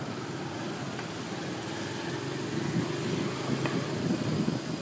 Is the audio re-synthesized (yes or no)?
no